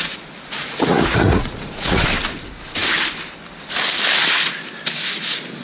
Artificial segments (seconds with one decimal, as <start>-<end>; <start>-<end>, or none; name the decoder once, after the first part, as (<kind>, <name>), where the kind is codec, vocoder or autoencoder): 0.6-2.0 (vocoder, Vocos)